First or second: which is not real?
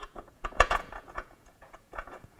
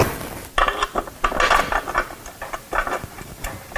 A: first